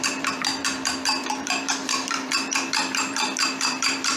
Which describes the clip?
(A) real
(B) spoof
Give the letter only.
B